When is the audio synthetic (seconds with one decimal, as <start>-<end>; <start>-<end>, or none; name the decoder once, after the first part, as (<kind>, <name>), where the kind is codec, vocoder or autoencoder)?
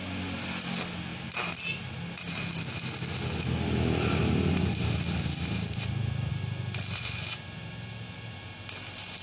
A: none